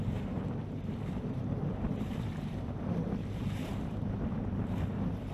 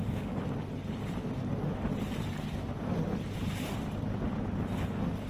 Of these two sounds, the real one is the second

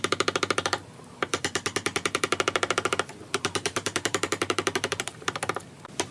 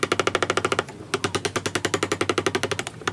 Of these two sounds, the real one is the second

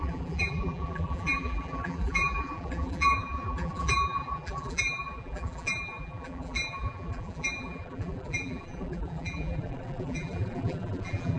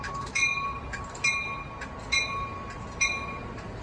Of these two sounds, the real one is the second